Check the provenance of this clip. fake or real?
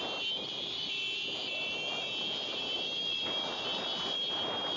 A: real